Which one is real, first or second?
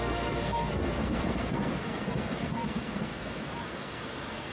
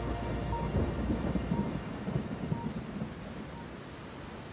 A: second